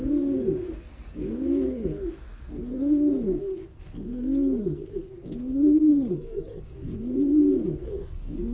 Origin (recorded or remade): remade